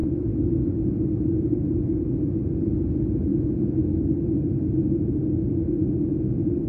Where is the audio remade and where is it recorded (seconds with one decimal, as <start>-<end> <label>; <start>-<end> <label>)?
0.0-6.7 recorded